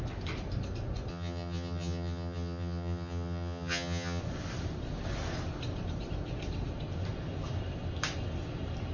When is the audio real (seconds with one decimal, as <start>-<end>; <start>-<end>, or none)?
0.0-1.1; 4.2-8.9